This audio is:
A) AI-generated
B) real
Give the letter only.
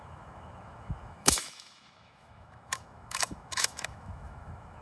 A